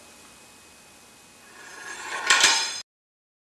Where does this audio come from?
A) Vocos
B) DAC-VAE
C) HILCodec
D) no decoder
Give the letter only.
D